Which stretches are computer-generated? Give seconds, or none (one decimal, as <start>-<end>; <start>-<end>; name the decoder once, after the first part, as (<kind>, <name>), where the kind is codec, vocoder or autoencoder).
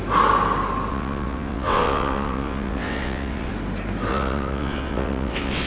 0.9-3.5 (vocoder, WaveNeXt); 4.1-5.7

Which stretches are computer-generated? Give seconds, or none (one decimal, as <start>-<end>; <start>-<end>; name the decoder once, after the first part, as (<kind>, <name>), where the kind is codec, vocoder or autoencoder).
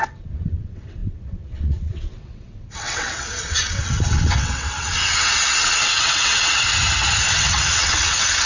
0.0-6.7 (vocoder, WaveNeXt); 7.3-8.5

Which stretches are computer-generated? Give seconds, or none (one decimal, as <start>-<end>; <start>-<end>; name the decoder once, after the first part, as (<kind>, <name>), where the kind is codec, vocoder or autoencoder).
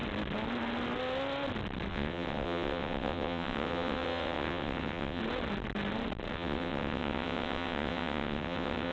1.9-5.2 (vocoder, WaveNeXt); 6.3-8.9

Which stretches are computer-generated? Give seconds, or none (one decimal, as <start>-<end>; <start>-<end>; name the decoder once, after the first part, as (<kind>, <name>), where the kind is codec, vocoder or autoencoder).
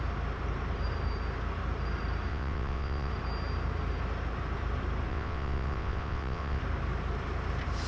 2.3-3.1 (vocoder, WaveNeXt); 5.1-6.6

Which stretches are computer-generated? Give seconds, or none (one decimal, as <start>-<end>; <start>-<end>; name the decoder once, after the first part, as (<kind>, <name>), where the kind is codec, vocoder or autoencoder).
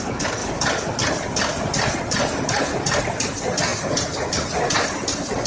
none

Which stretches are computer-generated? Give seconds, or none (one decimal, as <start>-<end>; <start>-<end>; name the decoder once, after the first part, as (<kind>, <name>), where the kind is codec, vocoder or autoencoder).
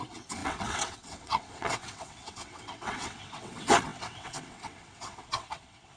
0.0-6.0 (vocoder, WaveNeXt)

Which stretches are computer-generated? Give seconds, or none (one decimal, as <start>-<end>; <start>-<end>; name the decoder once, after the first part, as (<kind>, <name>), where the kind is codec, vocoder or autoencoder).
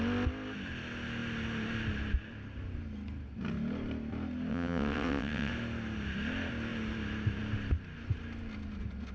4.5-5.5 (vocoder, WaveNeXt)